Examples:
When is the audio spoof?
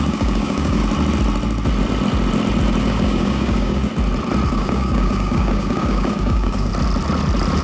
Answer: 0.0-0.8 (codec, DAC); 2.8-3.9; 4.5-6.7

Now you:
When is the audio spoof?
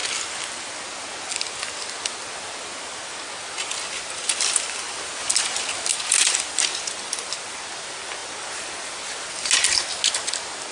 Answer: none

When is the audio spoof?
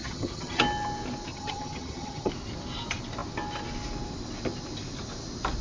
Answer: 0.0-0.6 (vocoder, HiFi-GAN); 1.3-2.3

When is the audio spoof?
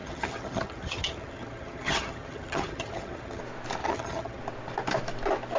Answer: 0.0-3.4 (vocoder, HiFi-GAN); 3.8-4.4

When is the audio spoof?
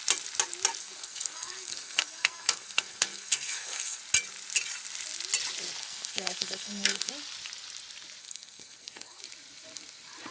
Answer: 0.8-4.0 (codec, SNAC); 5.8-7.1; 8.2-9.2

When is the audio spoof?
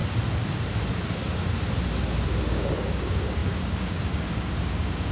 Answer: 2.5-5.1 (codec, DAC)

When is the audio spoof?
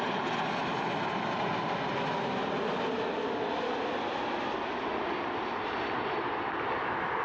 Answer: none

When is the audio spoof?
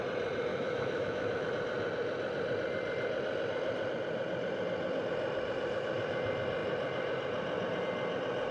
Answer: 0.5-1.5 (autoencoder, DAC-VAE)